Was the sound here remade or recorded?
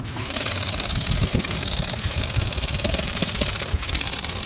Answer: remade